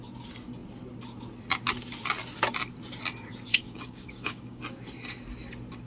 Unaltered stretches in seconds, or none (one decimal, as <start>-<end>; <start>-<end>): 0.0-3.5; 4.6-5.9